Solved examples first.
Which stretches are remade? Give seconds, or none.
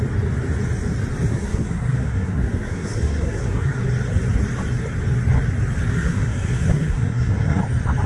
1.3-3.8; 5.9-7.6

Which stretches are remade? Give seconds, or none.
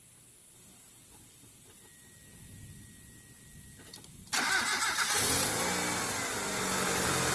none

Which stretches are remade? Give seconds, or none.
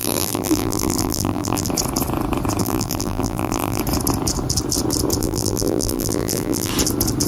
0.0-1.7; 2.6-3.8; 5.2-6.7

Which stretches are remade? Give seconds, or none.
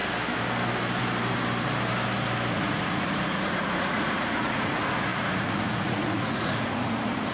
2.5-7.3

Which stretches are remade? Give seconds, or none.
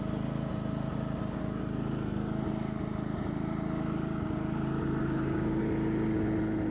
5.0-5.6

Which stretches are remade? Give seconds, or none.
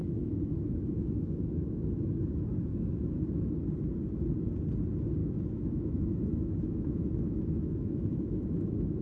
0.0-2.2; 2.7-3.5; 5.2-9.0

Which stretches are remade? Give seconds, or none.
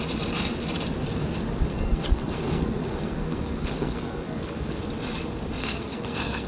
1.7-4.8; 5.6-6.5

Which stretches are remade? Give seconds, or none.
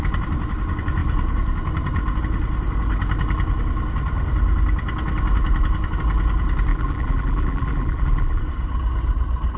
6.7-8.4